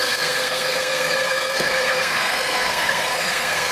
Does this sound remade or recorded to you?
remade